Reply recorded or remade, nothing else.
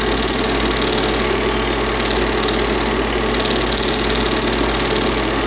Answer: recorded